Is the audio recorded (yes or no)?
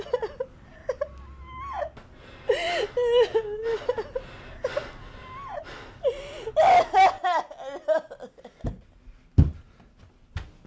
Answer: yes